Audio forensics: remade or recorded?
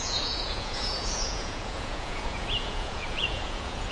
remade